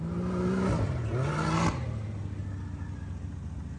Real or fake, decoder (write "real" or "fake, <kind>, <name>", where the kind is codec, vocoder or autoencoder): real